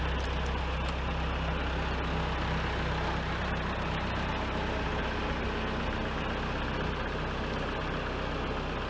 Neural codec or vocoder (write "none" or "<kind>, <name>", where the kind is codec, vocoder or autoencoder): none